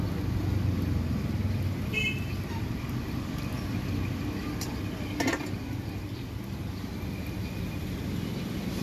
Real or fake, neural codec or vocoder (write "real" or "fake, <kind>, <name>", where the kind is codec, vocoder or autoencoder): real